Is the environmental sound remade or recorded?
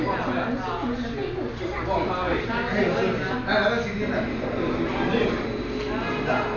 recorded